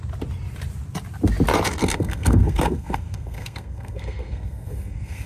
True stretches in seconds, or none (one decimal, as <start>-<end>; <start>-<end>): 0.0-1.8